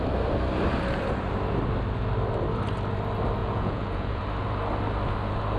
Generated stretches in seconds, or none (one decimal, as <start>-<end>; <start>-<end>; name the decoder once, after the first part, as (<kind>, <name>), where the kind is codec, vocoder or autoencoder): 3.4-4.2 (vocoder, Vocos)